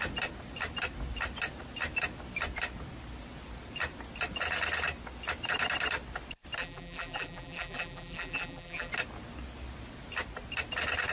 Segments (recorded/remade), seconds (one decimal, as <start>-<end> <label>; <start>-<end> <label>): 0.0-6.6 recorded; 6.6-8.9 remade; 8.9-11.1 recorded